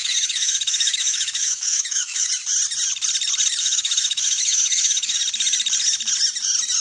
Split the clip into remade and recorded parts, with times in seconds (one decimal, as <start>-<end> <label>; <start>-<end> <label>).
0.0-2.3 remade; 2.3-3.6 recorded; 3.6-5.2 remade; 5.2-6.8 recorded